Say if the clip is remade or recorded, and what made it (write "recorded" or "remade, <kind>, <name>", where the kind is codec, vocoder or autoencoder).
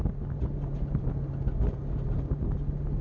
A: recorded